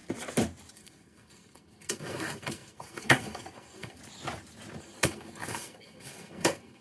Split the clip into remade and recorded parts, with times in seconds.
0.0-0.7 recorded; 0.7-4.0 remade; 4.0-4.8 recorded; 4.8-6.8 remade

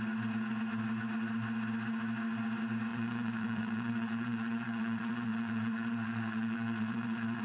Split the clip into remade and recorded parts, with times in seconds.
0.0-2.9 recorded; 2.9-7.4 remade

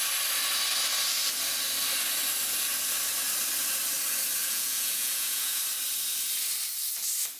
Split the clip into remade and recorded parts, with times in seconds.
0.0-4.4 recorded; 4.4-5.6 remade; 5.6-7.4 recorded